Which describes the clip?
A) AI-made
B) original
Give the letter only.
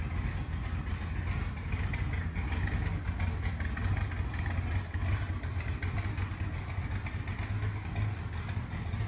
B